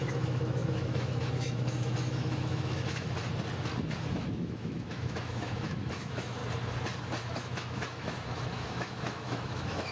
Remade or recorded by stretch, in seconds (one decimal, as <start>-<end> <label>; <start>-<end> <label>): 0.0-3.2 remade; 3.2-4.1 recorded; 4.1-6.4 remade; 6.4-7.2 recorded; 7.2-9.9 remade

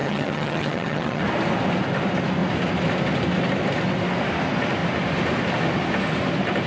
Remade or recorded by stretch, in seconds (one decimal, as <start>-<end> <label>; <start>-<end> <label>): 0.0-1.2 remade; 1.2-6.7 recorded

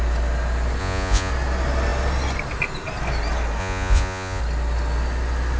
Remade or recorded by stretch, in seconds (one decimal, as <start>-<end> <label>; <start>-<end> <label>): 0.0-0.8 recorded; 0.8-1.3 remade; 1.3-3.6 recorded; 3.6-4.4 remade; 4.4-5.6 recorded